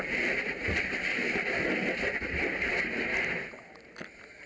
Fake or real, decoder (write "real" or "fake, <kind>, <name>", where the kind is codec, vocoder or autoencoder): real